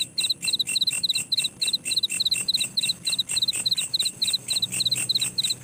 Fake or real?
real